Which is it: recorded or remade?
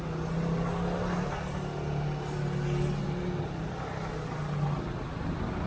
recorded